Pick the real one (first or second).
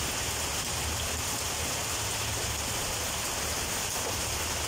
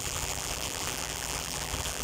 first